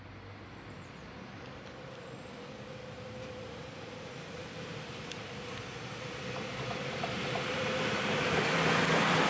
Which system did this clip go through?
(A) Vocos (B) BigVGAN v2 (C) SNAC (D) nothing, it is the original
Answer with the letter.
B